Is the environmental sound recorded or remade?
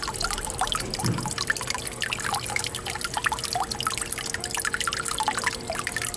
recorded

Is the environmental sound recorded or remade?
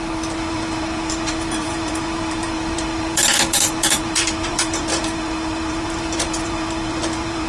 remade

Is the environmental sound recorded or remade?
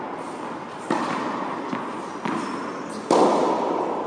recorded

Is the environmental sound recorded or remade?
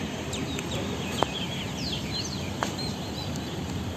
remade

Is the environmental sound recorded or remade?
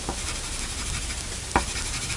recorded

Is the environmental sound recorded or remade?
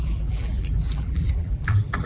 remade